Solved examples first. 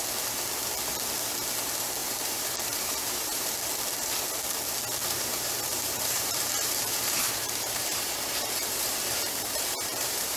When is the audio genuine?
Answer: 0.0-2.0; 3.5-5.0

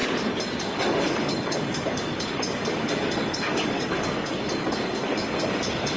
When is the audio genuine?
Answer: 0.0-0.6

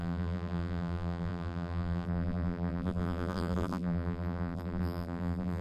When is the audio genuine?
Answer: none

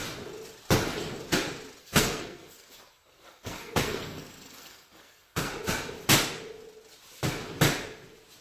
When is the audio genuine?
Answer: 0.0-1.8; 5.5-8.4

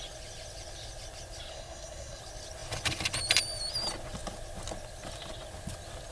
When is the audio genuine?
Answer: 0.0-1.5; 2.2-6.1

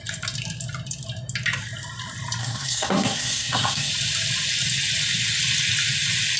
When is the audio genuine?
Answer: 0.0-2.4; 3.9-6.4

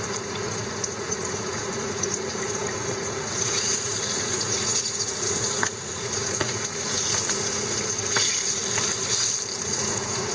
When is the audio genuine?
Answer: 8.6-9.6

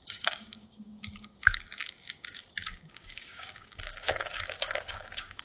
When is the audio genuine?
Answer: none